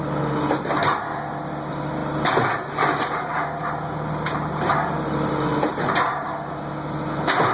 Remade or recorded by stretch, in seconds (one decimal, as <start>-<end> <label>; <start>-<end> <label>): 0.0-7.5 recorded